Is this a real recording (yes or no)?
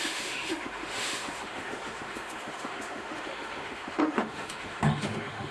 no